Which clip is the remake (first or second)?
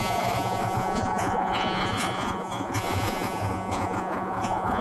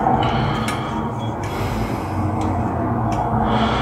first